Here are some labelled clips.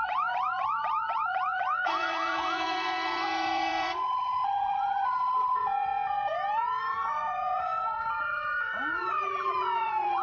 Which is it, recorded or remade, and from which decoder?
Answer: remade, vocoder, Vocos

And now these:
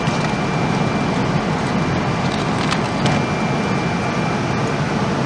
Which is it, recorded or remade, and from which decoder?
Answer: recorded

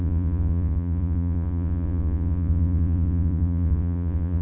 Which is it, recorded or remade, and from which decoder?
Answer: remade, vocoder, Vocos